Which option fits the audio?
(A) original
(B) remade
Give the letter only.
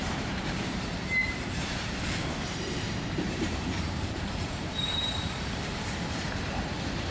B